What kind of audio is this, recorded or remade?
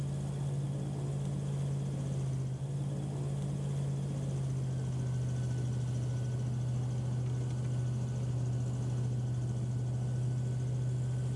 recorded